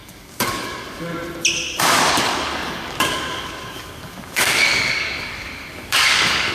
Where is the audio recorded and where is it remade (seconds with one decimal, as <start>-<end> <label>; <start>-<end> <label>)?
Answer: 0.0-1.1 remade; 1.1-1.8 recorded; 1.8-6.5 remade